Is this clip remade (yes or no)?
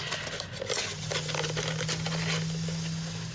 no